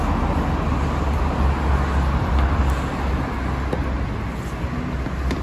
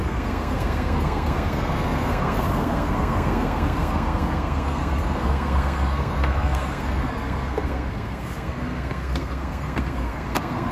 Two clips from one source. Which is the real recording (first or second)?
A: first